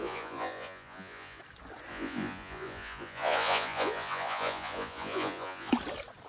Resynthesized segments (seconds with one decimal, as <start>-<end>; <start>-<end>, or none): 0.0-1.4; 1.9-5.7